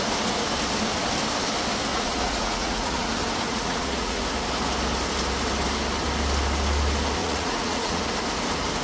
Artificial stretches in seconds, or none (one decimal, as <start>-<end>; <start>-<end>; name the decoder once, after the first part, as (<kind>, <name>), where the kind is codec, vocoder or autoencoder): 1.9-3.1 (vocoder, Vocos); 3.5-4.2; 7.2-8.0